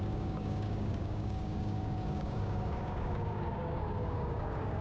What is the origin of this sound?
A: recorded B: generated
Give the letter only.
B